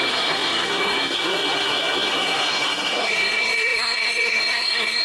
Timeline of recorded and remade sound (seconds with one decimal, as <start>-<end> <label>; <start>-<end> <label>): 0.0-5.0 remade